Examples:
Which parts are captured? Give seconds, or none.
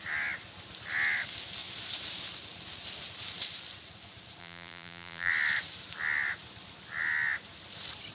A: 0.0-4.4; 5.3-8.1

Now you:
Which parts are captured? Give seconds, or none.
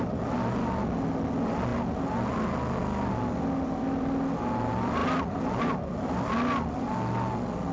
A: 0.0-7.7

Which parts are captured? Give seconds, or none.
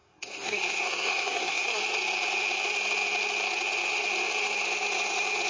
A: 1.8-5.5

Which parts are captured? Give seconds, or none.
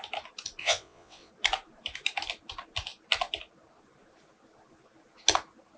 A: 0.0-0.6; 1.3-5.8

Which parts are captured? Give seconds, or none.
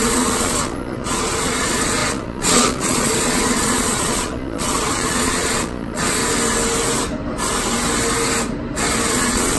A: 6.2-9.1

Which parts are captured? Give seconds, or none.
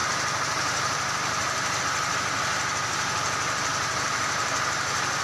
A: 1.8-3.7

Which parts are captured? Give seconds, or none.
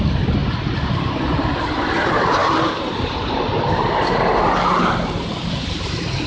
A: 0.0-6.3